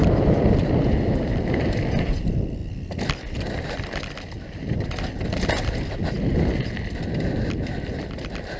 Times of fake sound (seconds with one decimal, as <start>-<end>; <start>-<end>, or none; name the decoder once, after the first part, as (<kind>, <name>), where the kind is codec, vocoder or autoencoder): 0.0-2.6 (vocoder, BigVGAN v2); 7.0-8.6